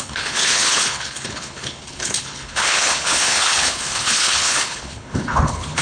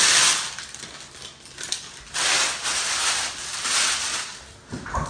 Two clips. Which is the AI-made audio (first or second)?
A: first